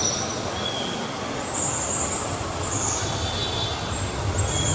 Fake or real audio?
real